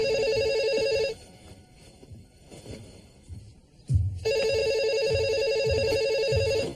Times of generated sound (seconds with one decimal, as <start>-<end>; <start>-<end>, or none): 0.0-3.4; 4.6-6.8